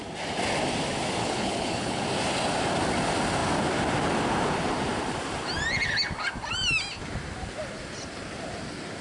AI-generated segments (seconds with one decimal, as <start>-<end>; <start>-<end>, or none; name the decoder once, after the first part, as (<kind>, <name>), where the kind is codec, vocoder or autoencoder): 1.2-2.0 (codec, HILCodec)